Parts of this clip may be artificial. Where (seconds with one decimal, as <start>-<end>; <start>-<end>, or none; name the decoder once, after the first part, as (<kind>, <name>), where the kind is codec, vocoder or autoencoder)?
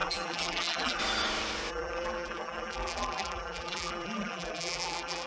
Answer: 0.0-1.0 (vocoder, BigVGAN v2); 1.7-5.3